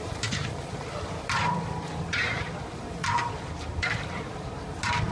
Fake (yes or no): yes